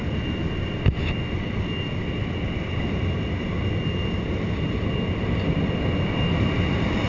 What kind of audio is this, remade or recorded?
recorded